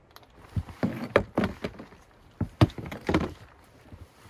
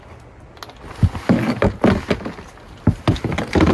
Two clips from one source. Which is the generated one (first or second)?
first